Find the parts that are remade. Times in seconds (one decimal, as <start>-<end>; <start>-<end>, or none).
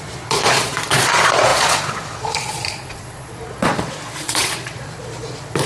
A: 0.0-5.7